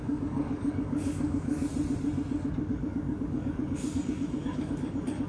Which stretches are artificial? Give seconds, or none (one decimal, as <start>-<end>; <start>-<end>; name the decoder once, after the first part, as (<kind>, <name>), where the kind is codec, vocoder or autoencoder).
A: 0.0-1.7 (codec, DAC); 2.7-5.3